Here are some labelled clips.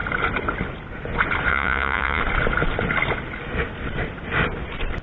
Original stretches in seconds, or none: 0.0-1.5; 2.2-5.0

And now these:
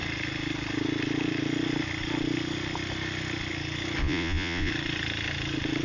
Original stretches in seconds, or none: 0.0-4.0; 4.7-5.8

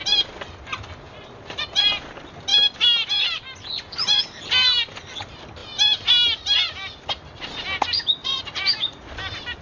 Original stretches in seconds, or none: 0.0-8.2; 9.1-9.6

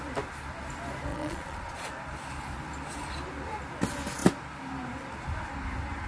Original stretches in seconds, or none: 0.0-1.1; 1.9-6.1

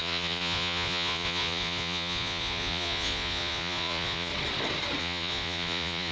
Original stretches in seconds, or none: 4.3-5.0